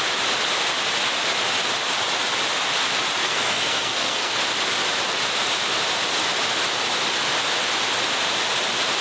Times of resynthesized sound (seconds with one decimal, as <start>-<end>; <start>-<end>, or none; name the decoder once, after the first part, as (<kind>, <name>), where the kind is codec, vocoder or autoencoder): 3.2-4.4 (codec, SNAC)